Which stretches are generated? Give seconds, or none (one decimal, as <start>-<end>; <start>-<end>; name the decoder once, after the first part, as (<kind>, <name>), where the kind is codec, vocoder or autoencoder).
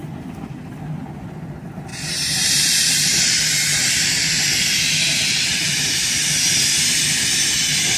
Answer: 0.0-0.7 (vocoder, BigVGAN v2); 1.9-3.2; 3.7-6.8